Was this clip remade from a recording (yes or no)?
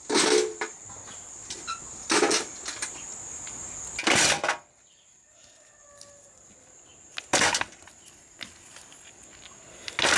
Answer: no